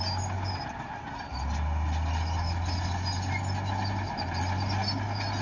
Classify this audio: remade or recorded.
recorded